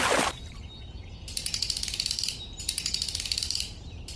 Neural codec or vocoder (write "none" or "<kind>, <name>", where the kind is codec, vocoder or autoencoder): none